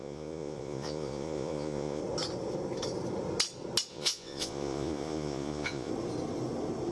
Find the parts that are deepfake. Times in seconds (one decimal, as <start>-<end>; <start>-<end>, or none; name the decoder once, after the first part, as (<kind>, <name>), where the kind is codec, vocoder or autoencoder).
0.0-2.0 (vocoder, Vocos); 3.9-5.9